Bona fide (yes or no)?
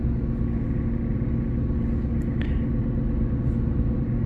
yes